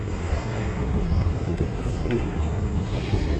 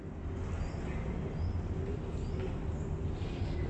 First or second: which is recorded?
second